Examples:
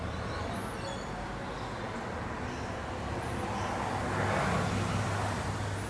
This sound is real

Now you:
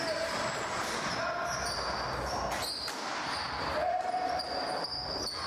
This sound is real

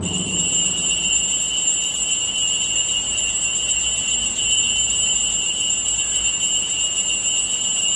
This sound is real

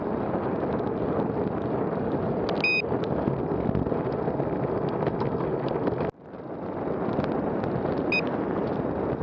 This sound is real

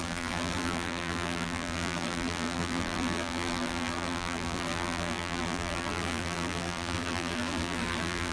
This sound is fake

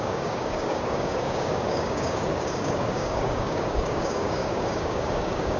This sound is fake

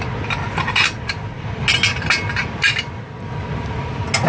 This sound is real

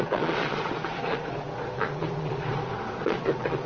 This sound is fake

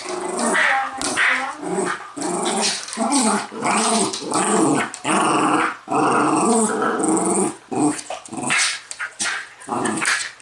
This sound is real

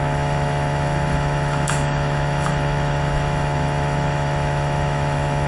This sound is fake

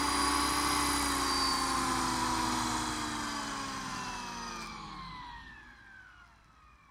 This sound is real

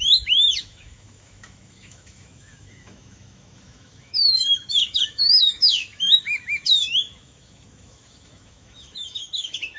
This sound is fake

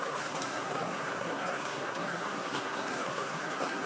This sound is fake